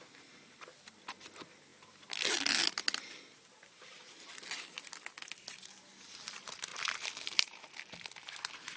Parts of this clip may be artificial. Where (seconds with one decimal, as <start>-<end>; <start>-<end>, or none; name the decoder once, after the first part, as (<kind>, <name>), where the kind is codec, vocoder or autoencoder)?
6.7-7.6 (vocoder, BigVGAN v2)